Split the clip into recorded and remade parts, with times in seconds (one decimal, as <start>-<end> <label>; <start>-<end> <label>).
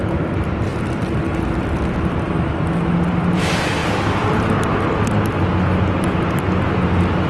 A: 0.0-7.3 recorded